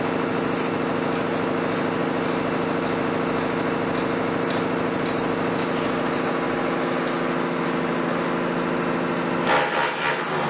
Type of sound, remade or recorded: recorded